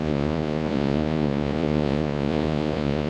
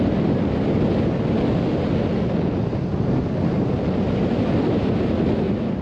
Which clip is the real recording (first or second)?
second